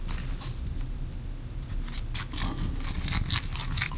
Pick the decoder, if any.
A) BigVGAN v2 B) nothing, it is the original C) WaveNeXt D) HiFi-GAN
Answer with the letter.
B